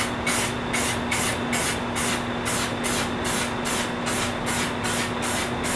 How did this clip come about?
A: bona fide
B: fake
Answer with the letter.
A